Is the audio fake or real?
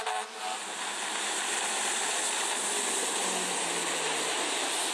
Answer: fake